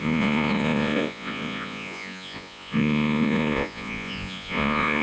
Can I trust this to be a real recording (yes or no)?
no